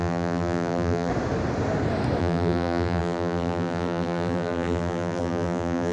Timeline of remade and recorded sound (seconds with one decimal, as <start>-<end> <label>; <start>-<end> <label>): 0.0-1.1 remade; 1.1-2.2 recorded; 2.2-5.9 remade